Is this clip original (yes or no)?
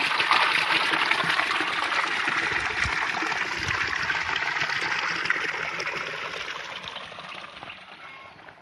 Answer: yes